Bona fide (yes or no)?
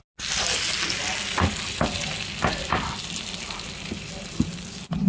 yes